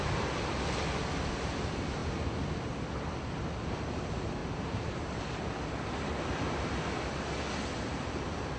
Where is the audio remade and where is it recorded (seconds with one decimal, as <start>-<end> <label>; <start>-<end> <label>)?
0.0-4.4 recorded; 4.4-5.7 remade; 5.7-8.6 recorded